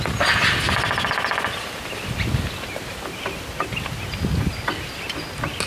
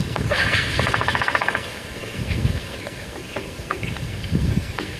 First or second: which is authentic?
first